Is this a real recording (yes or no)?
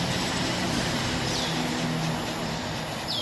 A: yes